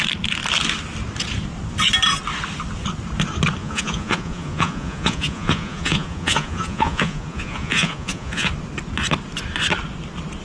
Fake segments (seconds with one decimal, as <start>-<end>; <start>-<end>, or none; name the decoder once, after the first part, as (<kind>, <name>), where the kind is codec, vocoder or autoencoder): 3.6-8.5 (vocoder, Vocos)